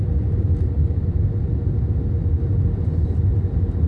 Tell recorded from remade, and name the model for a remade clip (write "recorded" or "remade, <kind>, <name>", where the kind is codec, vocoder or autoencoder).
remade, vocoder, BigVGAN v2